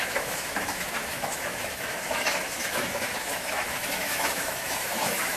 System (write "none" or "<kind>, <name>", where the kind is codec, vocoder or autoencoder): autoencoder, DAC-VAE